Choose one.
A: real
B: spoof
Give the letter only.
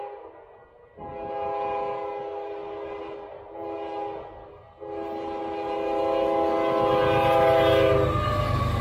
A